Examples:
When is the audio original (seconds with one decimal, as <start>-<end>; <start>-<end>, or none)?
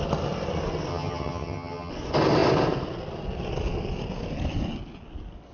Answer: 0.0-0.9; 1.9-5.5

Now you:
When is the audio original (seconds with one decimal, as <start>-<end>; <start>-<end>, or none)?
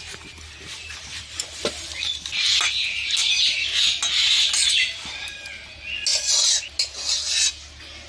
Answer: 0.0-0.8; 2.0-8.1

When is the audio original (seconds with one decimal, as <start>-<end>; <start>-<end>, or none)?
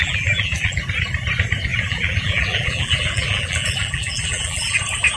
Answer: 0.8-1.7; 4.8-5.2